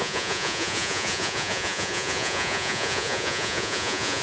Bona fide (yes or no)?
no